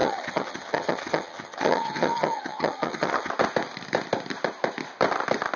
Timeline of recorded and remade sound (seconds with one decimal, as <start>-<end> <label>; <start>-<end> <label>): 0.0-3.3 remade; 3.3-5.6 recorded